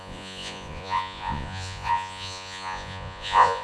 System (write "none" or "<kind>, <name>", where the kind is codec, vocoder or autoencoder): vocoder, Vocos